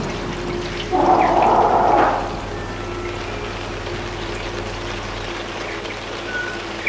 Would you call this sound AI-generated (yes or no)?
no